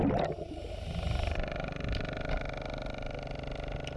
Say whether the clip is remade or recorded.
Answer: recorded